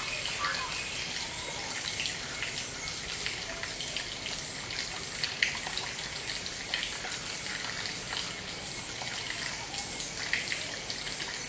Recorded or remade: recorded